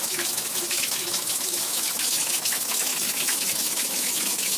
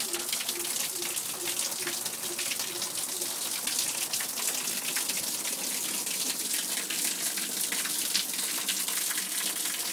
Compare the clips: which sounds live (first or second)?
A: second